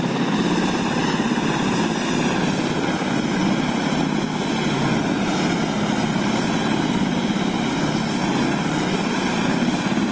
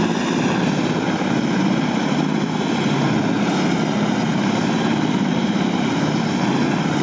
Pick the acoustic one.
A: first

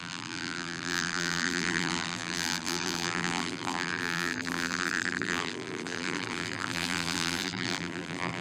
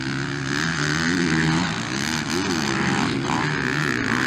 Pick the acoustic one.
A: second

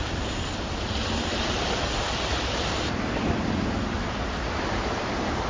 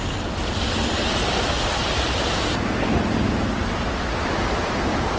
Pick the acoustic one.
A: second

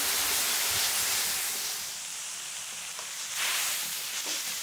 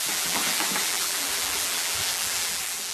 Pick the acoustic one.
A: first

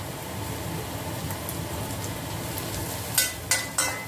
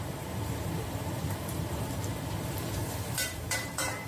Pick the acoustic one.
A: first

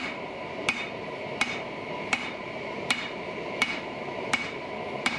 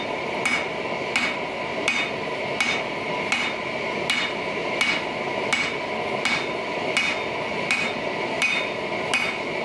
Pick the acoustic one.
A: second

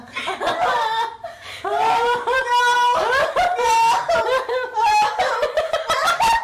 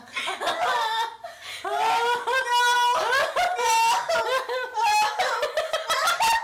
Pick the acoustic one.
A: second